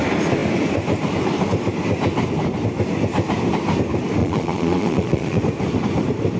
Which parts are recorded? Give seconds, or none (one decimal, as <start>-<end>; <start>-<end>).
0.0-4.2; 5.4-6.4